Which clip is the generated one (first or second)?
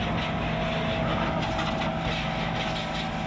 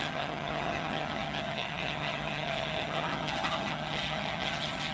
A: second